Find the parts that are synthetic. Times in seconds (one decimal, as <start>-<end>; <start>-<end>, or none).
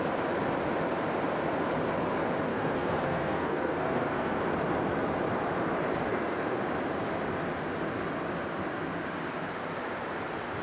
2.5-4.4; 6.1-6.6